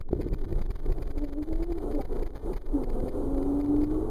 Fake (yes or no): no